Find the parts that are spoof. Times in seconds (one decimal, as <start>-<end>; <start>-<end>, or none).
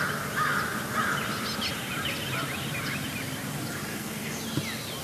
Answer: 3.9-4.4